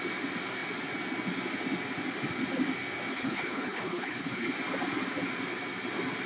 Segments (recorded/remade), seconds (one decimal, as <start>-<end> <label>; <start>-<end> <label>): 0.0-3.1 recorded; 3.1-4.5 remade; 4.5-6.3 recorded